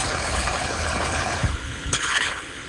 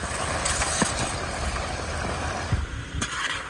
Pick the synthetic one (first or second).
first